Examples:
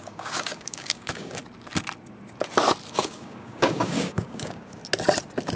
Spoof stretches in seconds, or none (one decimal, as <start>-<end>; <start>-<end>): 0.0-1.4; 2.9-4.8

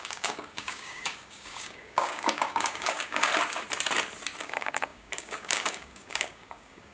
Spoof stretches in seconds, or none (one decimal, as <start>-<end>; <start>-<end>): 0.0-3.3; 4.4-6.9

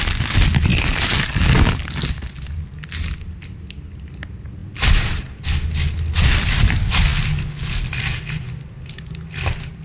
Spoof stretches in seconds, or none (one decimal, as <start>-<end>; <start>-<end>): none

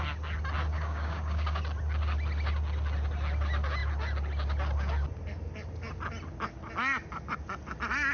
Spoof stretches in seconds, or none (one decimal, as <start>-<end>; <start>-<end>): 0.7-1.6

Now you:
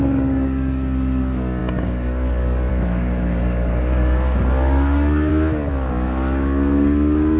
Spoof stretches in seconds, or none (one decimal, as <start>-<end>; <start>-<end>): 0.0-5.3; 5.9-7.4

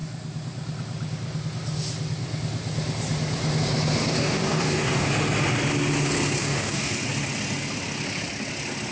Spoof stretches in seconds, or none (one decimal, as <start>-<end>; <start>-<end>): 4.1-5.1; 6.4-6.9

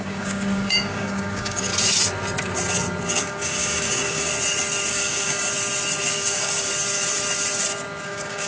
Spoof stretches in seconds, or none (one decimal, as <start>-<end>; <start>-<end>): 0.0-1.7; 3.1-4.3; 4.9-5.5; 6.1-6.7; 8.0-8.5